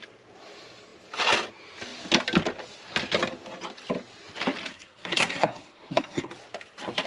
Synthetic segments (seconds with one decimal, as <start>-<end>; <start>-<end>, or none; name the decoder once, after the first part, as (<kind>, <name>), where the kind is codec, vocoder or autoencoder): 4.7-6.3 (codec, SNAC)